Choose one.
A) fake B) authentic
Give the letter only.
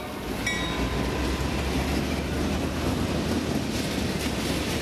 B